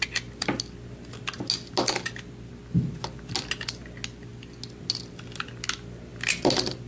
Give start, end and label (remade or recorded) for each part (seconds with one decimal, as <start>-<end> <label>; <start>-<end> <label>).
0.0-6.9 recorded